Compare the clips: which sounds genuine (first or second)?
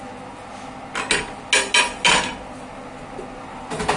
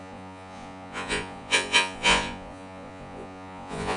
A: first